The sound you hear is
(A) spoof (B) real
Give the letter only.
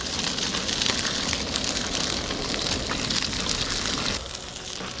B